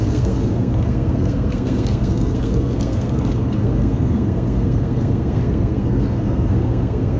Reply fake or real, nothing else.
fake